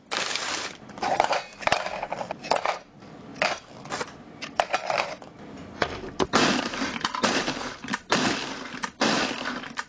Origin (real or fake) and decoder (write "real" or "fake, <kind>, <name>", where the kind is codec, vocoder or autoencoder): fake, vocoder, BigVGAN v2